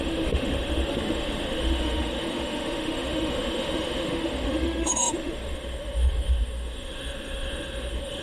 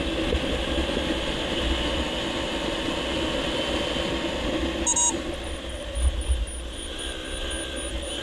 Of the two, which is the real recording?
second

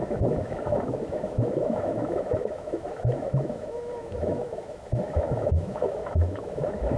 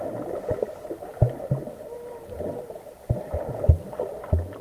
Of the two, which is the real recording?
second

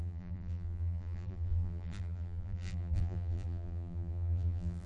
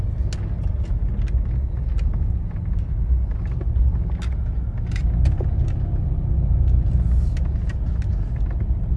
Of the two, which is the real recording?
second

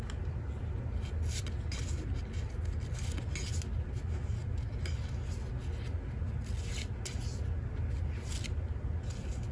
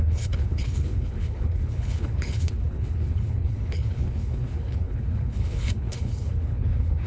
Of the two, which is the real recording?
first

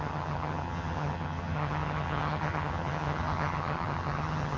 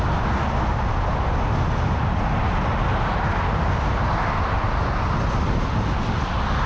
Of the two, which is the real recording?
second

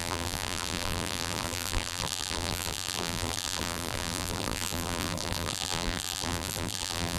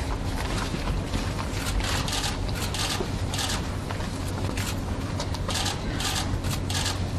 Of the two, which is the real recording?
second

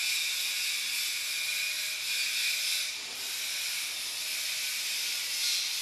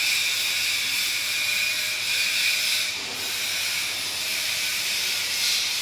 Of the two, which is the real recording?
first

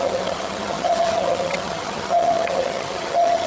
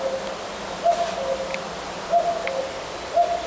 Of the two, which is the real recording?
second